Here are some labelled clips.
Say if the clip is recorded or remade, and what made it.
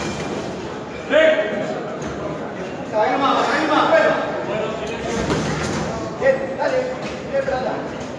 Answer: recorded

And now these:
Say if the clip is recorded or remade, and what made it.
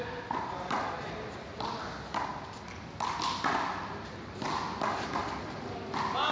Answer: recorded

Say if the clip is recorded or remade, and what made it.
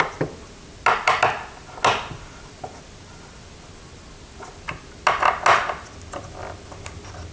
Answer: recorded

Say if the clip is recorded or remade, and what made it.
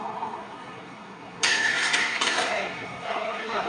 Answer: remade, codec, SNAC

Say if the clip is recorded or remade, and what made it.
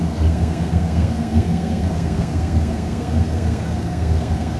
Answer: remade, codec, SNAC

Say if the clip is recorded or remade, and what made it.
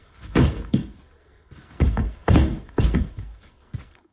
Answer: remade, codec, SNAC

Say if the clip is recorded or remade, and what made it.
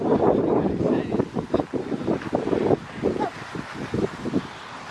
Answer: recorded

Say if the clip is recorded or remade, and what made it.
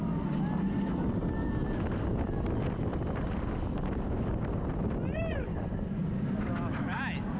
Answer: recorded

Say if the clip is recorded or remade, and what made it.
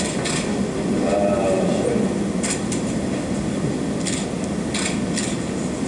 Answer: recorded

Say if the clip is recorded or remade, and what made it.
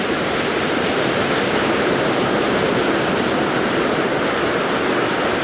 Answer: recorded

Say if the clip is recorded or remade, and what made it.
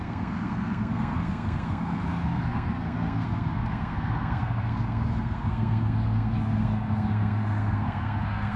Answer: remade, codec, SNAC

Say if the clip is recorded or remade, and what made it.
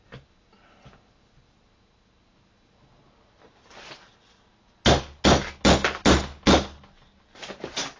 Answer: recorded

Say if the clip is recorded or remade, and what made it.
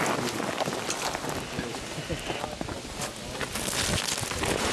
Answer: recorded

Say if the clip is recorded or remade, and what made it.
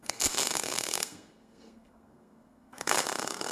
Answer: remade, codec, SNAC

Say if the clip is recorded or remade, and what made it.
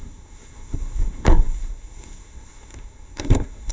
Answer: remade, codec, SNAC